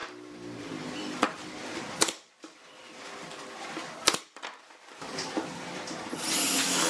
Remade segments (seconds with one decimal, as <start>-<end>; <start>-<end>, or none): 0.0-2.3; 2.8-5.6

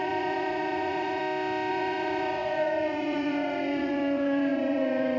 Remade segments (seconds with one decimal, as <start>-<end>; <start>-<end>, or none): 0.0-1.2; 1.7-5.2

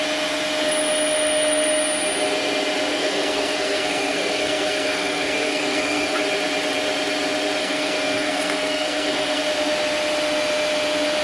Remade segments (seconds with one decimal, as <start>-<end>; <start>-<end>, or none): 2.9-6.2; 7.6-9.4

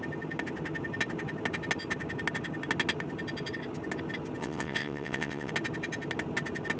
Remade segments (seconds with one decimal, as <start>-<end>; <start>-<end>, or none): 4.4-5.5

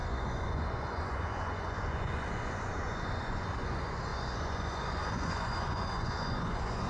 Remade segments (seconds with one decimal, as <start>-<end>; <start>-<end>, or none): 0.0-6.9

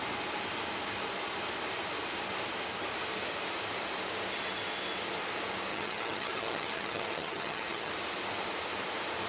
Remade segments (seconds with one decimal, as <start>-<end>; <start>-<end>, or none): 5.7-7.9

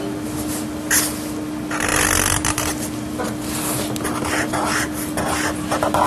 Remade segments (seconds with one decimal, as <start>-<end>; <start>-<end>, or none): none